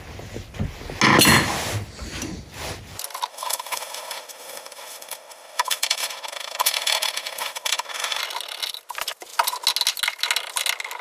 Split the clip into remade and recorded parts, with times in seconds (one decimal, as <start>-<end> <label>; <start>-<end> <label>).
0.0-3.3 recorded; 3.3-8.2 remade; 8.2-11.0 recorded